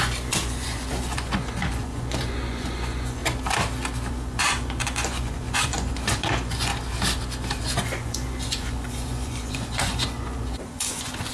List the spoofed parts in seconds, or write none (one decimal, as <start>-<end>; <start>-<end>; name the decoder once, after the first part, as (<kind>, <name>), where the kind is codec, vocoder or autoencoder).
0.0-3.2 (vocoder, Vocos); 4.1-6.7; 7.6-11.3